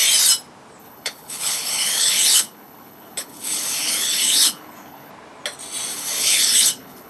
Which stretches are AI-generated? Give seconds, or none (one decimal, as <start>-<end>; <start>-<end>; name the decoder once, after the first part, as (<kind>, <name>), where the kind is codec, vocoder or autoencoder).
0.8-5.1 (codec, HILCodec); 5.9-7.1

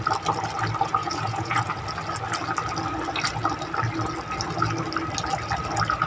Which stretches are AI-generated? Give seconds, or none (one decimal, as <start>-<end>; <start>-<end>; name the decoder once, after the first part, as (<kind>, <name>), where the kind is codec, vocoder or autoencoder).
1.0-1.8 (vocoder, Vocos)